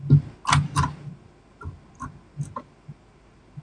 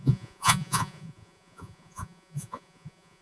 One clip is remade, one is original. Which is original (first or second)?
first